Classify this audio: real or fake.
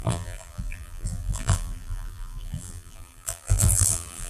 fake